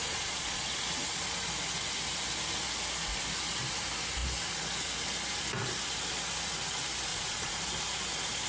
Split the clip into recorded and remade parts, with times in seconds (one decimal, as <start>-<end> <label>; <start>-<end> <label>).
0.0-0.6 remade; 0.6-7.1 recorded; 7.1-7.6 remade; 7.6-8.5 recorded